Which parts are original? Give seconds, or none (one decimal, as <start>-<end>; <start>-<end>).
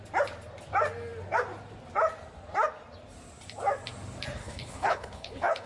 0.0-4.4